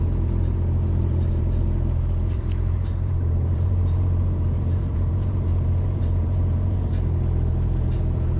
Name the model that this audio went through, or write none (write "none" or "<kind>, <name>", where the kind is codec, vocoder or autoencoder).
vocoder, BigVGAN v2